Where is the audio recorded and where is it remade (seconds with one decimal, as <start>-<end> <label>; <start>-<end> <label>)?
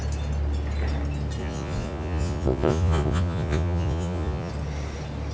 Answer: 0.0-1.4 recorded; 1.4-4.5 remade; 4.5-5.3 recorded